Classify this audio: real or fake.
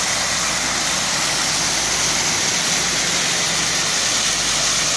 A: real